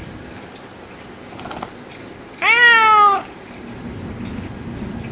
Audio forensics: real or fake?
real